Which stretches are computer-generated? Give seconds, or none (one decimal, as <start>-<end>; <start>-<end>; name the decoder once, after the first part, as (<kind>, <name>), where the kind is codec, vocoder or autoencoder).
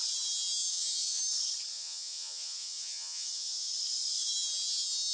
0.7-1.2 (vocoder, Vocos); 1.7-3.7